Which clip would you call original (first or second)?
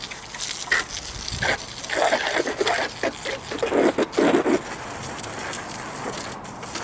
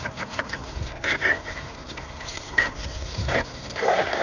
first